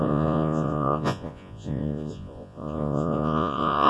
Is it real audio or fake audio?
fake